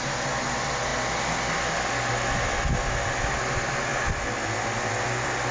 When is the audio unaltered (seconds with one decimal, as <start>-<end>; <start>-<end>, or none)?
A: 0.0-5.5